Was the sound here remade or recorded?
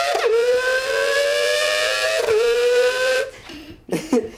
remade